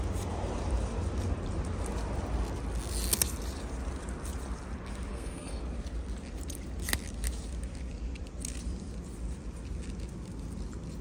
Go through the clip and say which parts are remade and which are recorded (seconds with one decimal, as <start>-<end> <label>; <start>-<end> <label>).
0.0-5.1 recorded; 5.1-5.6 remade; 5.6-11.0 recorded